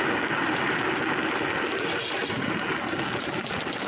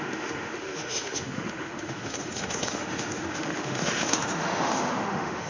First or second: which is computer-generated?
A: second